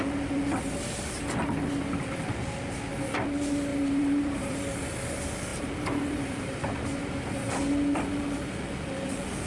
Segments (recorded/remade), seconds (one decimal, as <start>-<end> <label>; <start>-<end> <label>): 0.0-3.7 recorded; 3.7-4.6 remade; 4.6-5.5 recorded; 5.5-6.6 remade; 6.6-7.0 recorded; 7.0-7.5 remade; 7.5-9.5 recorded